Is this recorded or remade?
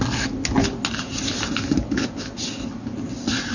recorded